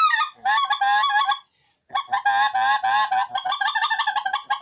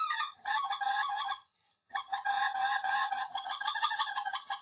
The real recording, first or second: first